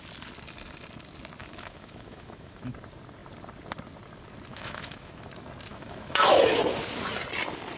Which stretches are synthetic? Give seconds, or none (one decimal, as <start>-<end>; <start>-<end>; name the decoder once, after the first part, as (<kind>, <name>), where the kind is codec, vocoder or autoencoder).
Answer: 1.4-2.7 (autoencoder, DAC-VAE); 4.5-5.3; 5.7-6.6